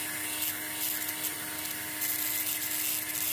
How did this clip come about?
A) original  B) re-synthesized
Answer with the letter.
A